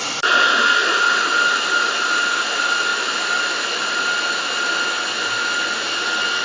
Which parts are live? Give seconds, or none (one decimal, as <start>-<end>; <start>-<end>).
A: 0.0-6.4